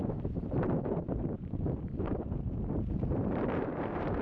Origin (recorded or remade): remade